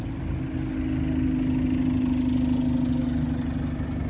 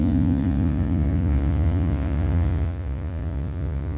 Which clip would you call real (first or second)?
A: first